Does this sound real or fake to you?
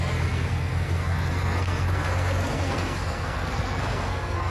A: fake